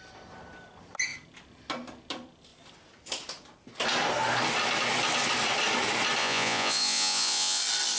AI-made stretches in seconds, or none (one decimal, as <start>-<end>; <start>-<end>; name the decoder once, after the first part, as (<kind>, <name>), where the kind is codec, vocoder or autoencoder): 6.2-7.6 (vocoder, Vocos)